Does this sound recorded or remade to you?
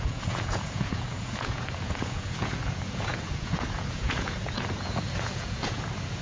remade